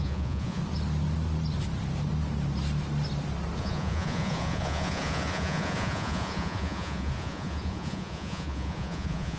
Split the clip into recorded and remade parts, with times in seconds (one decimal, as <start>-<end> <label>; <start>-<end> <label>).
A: 0.0-0.6 remade; 0.6-3.6 recorded; 3.6-9.4 remade